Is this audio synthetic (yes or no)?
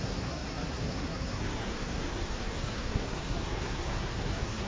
yes